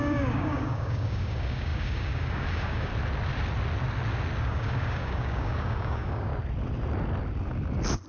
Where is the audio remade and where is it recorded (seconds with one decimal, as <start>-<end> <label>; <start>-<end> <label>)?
0.0-2.9 remade; 2.9-4.4 recorded; 4.4-6.3 remade; 6.3-8.1 recorded